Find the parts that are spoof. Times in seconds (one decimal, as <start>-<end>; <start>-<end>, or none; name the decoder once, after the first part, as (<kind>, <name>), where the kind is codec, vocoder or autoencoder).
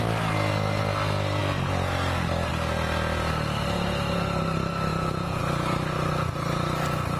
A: 4.9-5.4 (vocoder, Vocos)